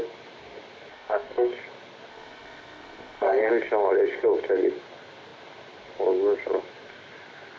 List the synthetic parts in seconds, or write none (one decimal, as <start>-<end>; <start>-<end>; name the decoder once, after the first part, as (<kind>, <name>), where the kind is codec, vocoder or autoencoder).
0.9-1.5 (codec, SNAC); 2.1-3.5